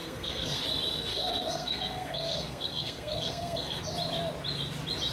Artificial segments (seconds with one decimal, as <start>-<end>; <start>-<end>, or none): 0.0-0.6; 1.1-3.8